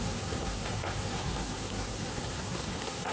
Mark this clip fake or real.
fake